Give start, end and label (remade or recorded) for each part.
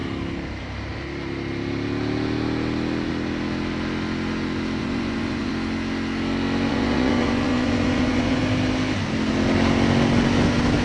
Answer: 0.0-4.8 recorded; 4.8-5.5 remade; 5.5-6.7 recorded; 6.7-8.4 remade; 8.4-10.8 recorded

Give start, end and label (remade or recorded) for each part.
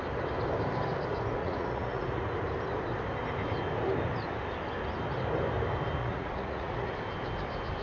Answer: 0.0-1.4 recorded; 1.4-2.2 remade; 2.2-6.0 recorded; 6.0-6.9 remade; 6.9-7.8 recorded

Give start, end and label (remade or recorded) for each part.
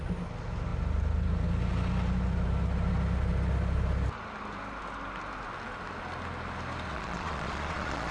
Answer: 0.0-6.9 recorded; 6.9-8.1 remade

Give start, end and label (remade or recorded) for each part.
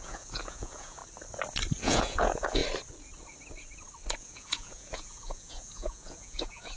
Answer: 0.0-1.0 remade; 1.0-1.8 recorded; 1.8-2.6 remade; 2.6-4.2 recorded; 4.2-6.8 remade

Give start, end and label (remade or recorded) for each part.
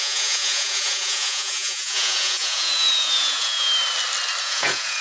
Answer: 0.0-3.7 remade; 3.7-4.4 recorded; 4.4-5.0 remade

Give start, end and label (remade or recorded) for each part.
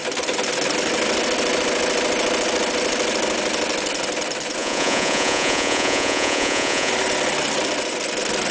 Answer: 0.0-4.6 recorded; 4.6-6.9 remade; 6.9-8.5 recorded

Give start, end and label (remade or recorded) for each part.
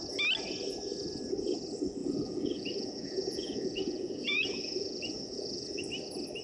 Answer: 0.0-2.0 recorded; 2.0-5.8 remade; 5.8-6.4 recorded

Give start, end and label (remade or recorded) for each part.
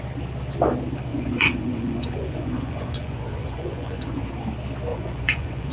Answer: 0.0-1.1 recorded; 1.1-4.3 remade; 4.3-4.9 recorded; 4.9-5.7 remade